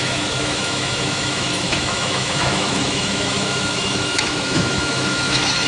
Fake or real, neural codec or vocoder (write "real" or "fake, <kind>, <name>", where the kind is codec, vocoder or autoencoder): fake, autoencoder, DAC-VAE